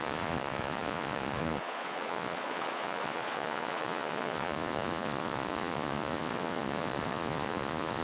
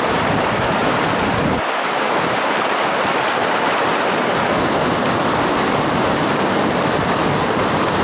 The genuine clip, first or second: second